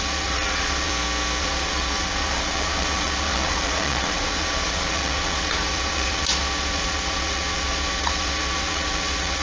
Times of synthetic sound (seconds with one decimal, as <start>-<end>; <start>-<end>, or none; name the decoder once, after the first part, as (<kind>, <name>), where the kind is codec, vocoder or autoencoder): 0.0-0.9 (vocoder, Vocos); 1.4-9.4